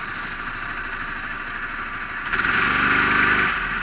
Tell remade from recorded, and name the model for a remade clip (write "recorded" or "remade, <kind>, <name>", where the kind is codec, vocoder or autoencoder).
recorded